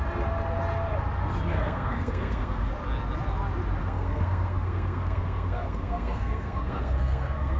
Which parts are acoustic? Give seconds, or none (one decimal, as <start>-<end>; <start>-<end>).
0.0-1.5; 2.7-3.8